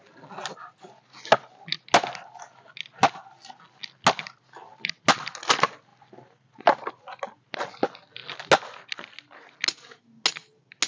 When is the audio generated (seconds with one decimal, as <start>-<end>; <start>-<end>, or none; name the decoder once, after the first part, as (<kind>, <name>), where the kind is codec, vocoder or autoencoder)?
5.9-6.9 (vocoder, BigVGAN v2)